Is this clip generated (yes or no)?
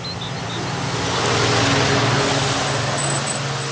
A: no